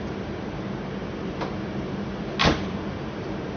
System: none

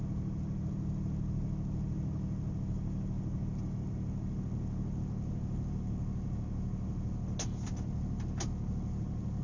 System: none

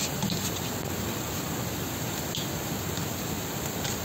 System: none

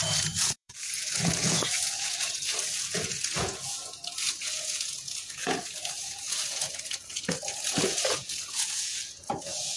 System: vocoder, Vocos